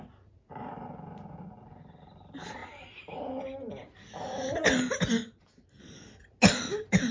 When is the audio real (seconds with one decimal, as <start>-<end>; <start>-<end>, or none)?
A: 0.0-7.1